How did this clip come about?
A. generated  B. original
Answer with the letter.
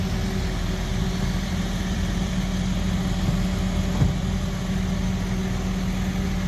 B